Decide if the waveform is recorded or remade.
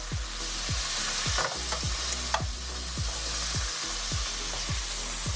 recorded